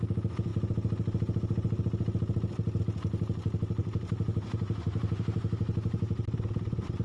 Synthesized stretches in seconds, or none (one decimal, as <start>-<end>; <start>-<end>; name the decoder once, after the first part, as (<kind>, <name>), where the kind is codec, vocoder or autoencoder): 3.8-6.2 (vocoder, BigVGAN v2)